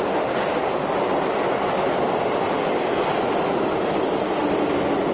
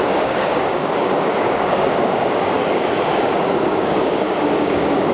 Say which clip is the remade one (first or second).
second